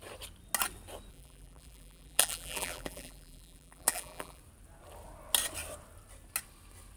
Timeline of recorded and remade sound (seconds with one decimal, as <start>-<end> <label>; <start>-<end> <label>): 0.0-1.1 recorded; 1.1-4.4 remade; 4.4-7.0 recorded